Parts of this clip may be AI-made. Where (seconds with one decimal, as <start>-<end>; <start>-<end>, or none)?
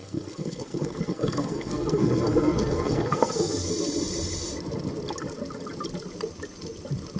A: 0.0-3.7